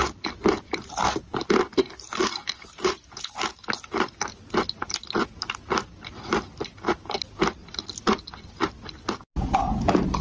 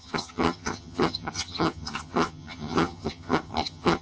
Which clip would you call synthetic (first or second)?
second